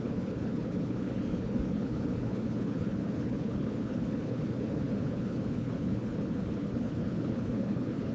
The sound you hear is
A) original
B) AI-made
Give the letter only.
B